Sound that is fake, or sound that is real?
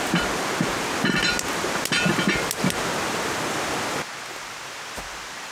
real